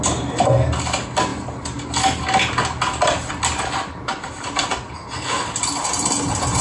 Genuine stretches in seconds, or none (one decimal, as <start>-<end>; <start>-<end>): 0.0-6.6